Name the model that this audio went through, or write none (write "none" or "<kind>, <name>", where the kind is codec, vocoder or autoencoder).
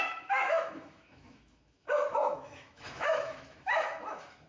autoencoder, DAC-VAE